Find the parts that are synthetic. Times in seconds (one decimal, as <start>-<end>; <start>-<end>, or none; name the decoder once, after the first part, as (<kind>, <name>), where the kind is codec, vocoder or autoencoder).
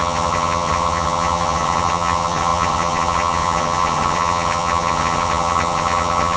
0.0-6.4 (vocoder, HiFi-GAN)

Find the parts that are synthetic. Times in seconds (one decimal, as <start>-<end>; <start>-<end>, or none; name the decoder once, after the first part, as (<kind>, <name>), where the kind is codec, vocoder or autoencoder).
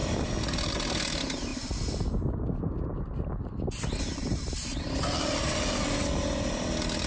none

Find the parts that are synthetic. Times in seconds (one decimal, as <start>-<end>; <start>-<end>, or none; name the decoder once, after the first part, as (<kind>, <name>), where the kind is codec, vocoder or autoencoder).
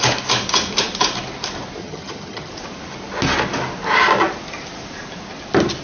1.8-2.5 (vocoder, HiFi-GAN)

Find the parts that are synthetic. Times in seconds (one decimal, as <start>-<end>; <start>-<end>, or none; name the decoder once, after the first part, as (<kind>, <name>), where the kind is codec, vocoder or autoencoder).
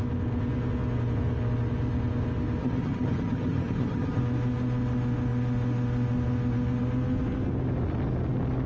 2.6-4.2 (vocoder, HiFi-GAN)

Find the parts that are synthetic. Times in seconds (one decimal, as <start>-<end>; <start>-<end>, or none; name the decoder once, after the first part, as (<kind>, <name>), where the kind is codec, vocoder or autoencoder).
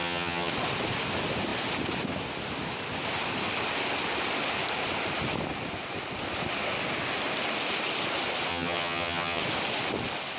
0.0-0.5 (vocoder, HiFi-GAN); 8.5-9.4